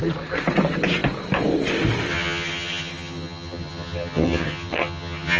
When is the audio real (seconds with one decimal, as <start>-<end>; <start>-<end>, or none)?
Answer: 0.0-2.1